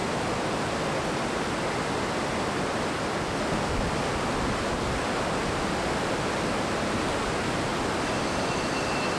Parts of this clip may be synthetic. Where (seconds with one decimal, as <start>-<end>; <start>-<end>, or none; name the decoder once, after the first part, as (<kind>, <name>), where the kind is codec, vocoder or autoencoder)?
7.7-9.2 (vocoder, BigVGAN v2)